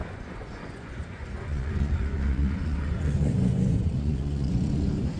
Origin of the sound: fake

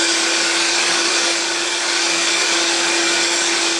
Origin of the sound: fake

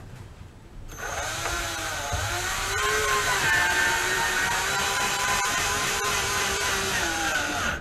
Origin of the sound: fake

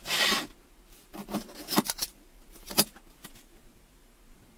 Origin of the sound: fake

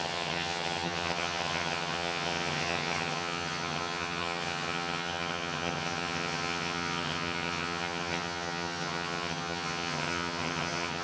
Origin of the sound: fake